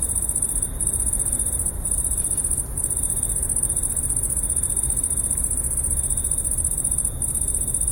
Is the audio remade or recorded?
recorded